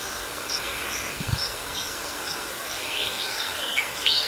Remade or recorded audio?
remade